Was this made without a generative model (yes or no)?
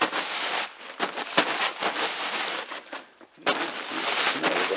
yes